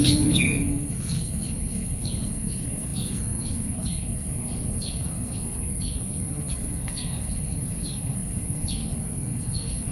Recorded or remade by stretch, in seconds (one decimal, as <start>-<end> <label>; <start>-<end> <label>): 0.0-9.9 remade